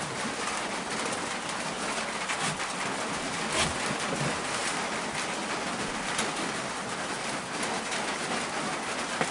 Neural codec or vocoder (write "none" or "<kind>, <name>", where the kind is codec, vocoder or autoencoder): none